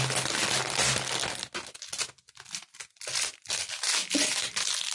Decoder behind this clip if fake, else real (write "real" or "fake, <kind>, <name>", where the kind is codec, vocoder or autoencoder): real